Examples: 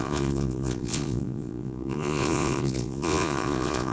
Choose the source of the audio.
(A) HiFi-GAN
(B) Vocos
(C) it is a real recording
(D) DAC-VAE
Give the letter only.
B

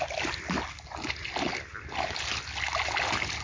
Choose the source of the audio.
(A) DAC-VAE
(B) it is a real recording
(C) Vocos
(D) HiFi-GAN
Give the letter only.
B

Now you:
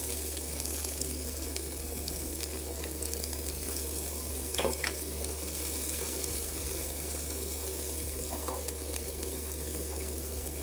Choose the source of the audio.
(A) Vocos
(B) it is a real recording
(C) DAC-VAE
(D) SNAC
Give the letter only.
D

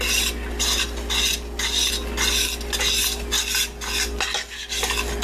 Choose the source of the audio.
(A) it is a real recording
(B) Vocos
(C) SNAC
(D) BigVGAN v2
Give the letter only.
A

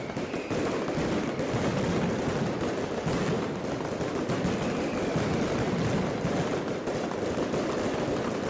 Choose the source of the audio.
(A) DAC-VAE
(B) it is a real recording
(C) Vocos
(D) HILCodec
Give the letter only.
B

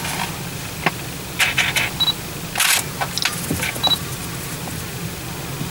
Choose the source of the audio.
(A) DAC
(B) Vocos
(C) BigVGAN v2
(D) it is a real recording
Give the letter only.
D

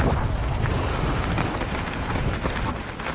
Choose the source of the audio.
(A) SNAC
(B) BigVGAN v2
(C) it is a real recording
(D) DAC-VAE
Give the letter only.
C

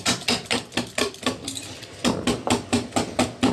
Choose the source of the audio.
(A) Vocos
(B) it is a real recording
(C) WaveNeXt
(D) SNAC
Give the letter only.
B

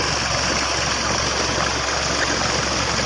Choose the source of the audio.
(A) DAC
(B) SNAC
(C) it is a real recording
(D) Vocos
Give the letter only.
C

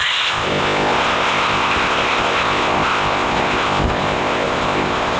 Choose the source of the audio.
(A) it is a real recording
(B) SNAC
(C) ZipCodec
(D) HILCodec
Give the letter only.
C